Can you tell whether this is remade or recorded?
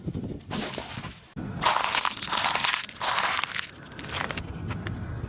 recorded